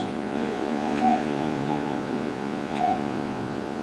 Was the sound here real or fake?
fake